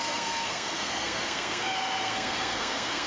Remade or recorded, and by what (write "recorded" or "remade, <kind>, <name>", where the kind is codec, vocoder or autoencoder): remade, codec, SNAC